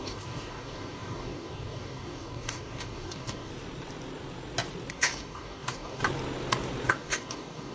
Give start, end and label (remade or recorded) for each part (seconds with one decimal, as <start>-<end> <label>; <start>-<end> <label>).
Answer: 0.0-3.5 remade; 3.5-4.9 recorded; 4.9-6.0 remade; 6.0-6.9 recorded; 6.9-7.7 remade